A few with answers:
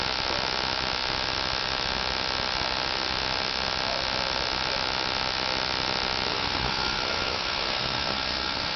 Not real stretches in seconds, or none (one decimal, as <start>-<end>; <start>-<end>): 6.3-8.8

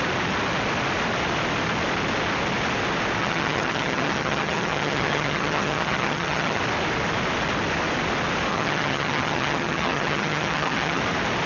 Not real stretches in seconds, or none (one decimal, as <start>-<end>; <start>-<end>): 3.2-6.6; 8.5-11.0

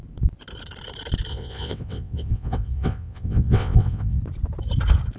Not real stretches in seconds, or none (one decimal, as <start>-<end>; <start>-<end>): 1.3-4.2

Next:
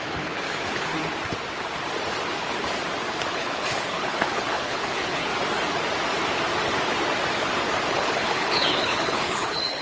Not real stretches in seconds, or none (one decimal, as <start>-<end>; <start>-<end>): 0.0-0.9; 3.3-5.3; 7.9-9.8

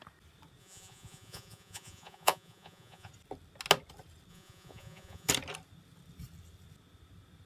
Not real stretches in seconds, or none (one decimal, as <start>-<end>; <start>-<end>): 0.6-3.1; 4.3-5.3

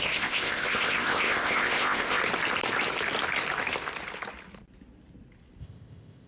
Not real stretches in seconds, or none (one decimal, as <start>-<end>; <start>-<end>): 0.0-2.2; 5.6-6.3

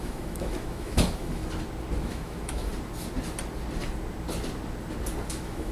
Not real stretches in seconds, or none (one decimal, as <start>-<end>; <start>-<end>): 0.0-1.4; 2.0-2.7; 5.3-5.7